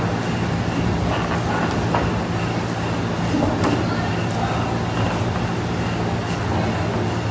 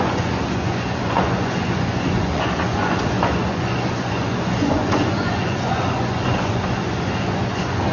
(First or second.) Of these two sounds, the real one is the first